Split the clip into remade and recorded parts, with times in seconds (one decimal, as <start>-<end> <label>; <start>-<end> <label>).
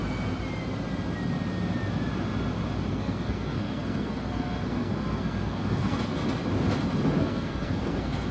0.0-2.9 recorded; 2.9-6.2 remade; 6.2-7.2 recorded; 7.2-8.3 remade